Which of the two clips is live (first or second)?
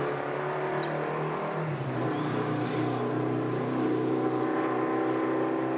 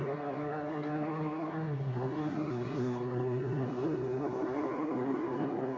first